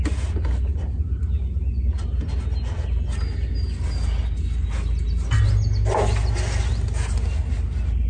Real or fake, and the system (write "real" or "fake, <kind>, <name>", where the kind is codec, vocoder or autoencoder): real